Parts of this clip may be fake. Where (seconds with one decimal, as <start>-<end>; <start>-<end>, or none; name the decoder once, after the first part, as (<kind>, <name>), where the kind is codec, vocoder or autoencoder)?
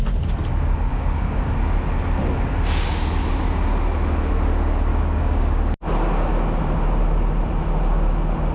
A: 0.9-1.5 (codec, DAC); 4.9-5.6